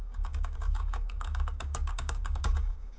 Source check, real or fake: fake